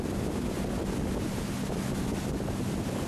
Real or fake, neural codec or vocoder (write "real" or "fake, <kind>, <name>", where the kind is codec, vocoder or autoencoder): real